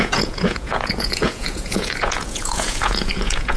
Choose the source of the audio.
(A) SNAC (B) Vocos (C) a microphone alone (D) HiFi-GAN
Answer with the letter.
B